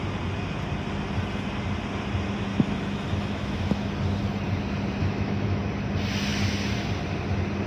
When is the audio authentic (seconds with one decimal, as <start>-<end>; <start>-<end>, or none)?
0.0-2.5; 3.8-5.0; 5.6-7.7